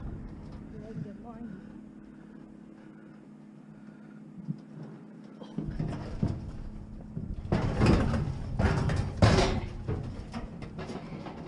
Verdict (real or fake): real